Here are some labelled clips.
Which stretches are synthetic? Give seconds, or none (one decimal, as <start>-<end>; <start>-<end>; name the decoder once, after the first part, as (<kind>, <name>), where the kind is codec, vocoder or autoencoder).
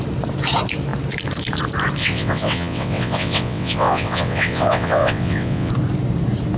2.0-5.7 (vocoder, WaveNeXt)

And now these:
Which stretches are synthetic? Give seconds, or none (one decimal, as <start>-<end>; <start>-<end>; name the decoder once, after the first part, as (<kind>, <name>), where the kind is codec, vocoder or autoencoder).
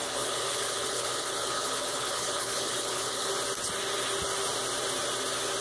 0.0-3.3 (codec, HILCodec)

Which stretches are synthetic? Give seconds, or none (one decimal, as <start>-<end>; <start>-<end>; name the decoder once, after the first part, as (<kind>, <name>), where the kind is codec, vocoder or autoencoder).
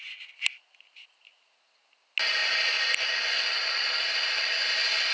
none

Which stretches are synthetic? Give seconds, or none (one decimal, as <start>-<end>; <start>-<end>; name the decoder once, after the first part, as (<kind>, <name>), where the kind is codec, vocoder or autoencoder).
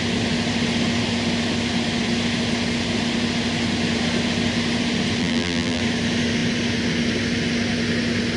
5.2-5.8 (vocoder, BigVGAN v2)